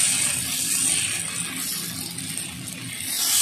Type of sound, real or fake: real